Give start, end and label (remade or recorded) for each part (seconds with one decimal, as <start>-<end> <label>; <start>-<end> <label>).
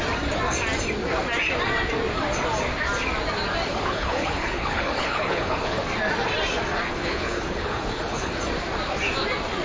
0.0-3.7 recorded; 3.7-5.8 remade; 5.8-6.9 recorded; 6.9-8.3 remade; 8.3-9.6 recorded